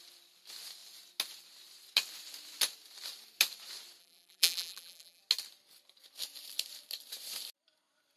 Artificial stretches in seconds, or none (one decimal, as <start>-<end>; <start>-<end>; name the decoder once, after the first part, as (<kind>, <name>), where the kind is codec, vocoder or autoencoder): 4.0-5.2 (vocoder, BigVGAN v2)